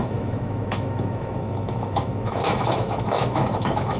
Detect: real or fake fake